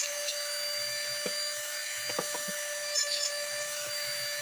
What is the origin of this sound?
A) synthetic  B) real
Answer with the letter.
A